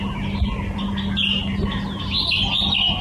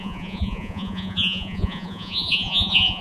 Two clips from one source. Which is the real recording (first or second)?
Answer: first